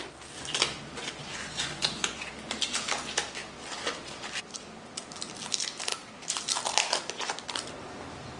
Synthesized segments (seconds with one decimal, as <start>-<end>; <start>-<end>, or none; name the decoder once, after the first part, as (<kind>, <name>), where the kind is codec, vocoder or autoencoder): 1.2-2.3 (vocoder, Vocos)